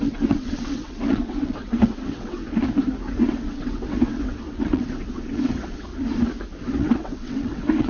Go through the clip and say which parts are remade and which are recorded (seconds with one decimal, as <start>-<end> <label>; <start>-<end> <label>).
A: 0.0-2.4 remade; 2.4-3.2 recorded; 3.2-5.9 remade; 5.9-6.7 recorded; 6.7-7.9 remade